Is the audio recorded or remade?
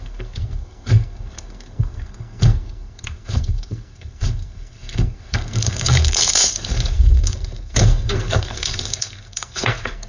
remade